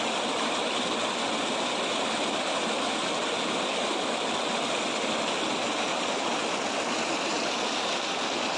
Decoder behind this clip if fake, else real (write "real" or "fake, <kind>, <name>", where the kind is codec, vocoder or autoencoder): real